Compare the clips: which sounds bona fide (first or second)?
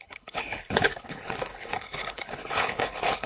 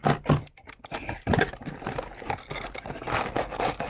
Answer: second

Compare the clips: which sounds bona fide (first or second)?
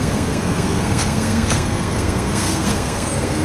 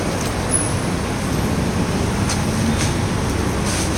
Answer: second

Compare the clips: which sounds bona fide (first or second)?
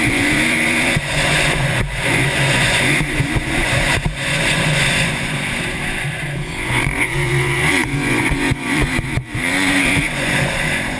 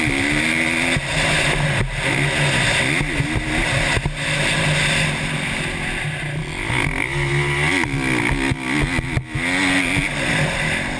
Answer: second